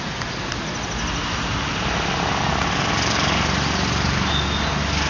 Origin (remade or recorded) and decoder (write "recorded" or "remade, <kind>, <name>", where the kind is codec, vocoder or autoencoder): recorded